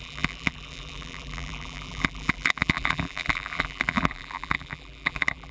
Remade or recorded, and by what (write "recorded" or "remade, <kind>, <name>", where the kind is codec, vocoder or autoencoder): remade, vocoder, BigVGAN v2